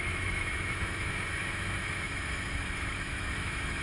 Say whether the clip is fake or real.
fake